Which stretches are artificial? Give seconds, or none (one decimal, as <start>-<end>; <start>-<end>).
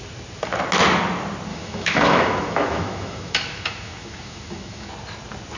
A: 1.5-4.9